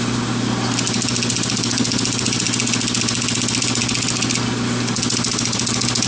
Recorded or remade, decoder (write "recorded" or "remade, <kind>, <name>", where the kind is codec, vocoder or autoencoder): recorded